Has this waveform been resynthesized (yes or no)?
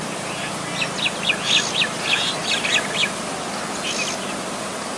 no